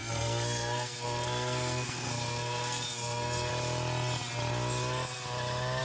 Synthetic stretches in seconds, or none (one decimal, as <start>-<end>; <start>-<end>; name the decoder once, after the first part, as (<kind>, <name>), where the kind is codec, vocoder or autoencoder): 0.0-3.5 (codec, SNAC)